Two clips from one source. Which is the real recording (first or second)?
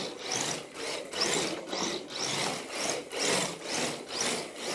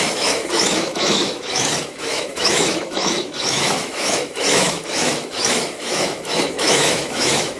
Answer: first